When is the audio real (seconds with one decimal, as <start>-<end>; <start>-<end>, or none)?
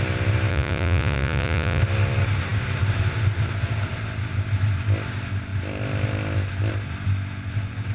0.0-0.5; 1.8-7.9